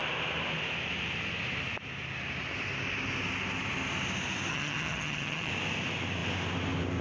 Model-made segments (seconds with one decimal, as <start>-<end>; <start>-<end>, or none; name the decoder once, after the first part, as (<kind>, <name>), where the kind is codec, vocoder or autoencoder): 4.5-5.5 (vocoder, HiFi-GAN)